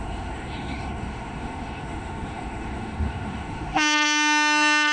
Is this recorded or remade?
remade